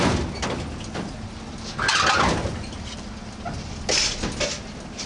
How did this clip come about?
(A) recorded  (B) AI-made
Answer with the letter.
A